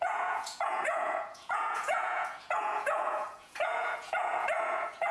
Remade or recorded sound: remade